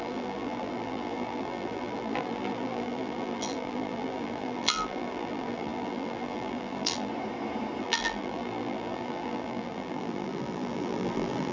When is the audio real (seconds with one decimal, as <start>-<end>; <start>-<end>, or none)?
7.1-7.8

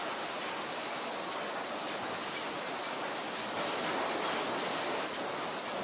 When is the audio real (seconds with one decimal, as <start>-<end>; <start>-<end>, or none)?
0.0-5.8

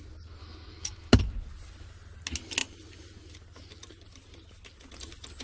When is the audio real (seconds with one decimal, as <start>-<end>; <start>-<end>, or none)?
0.0-0.4; 1.2-5.4

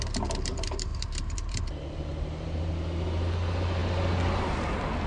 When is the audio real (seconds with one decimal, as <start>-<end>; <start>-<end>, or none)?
0.0-0.9; 1.6-2.1; 2.7-5.1

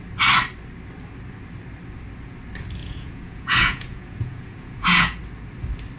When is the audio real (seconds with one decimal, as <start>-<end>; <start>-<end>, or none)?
0.0-2.8; 5.2-6.0

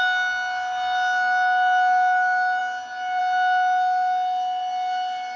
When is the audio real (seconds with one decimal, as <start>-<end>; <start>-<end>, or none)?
0.0-5.4